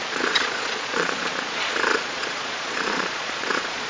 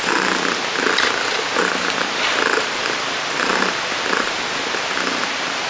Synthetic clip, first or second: first